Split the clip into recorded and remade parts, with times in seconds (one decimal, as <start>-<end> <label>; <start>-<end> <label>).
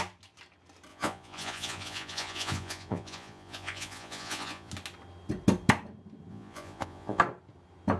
0.0-0.9 recorded; 0.9-4.7 remade; 4.7-6.3 recorded; 6.3-7.2 remade; 7.2-8.0 recorded